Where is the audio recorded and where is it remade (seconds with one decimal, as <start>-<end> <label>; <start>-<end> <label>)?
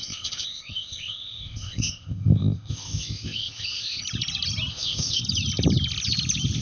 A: 0.0-4.0 remade; 4.0-4.7 recorded; 4.7-5.2 remade; 5.2-6.6 recorded